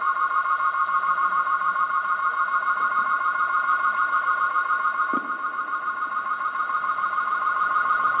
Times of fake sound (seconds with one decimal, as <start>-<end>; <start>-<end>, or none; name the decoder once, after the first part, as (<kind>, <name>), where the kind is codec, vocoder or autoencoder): 3.7-4.4 (vocoder, BigVGAN v2)

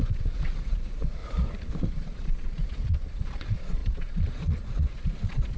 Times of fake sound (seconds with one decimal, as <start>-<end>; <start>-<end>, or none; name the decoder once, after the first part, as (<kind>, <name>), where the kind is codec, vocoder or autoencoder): 0.0-1.2 (vocoder, Vocos); 1.8-5.6

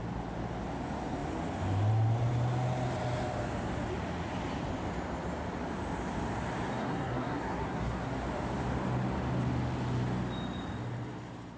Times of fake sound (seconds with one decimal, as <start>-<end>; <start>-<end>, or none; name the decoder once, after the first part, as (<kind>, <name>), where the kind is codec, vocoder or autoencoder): 6.7-8.1 (codec, SNAC)

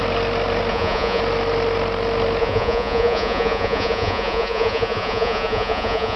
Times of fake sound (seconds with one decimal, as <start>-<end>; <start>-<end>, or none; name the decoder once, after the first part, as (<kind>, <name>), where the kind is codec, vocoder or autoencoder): 0.7-1.2 (vocoder, Vocos); 2.4-6.2

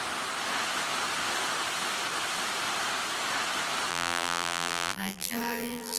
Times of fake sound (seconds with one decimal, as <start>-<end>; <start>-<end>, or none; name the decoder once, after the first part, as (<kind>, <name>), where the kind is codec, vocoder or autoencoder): 3.9-6.0 (vocoder, BigVGAN v2)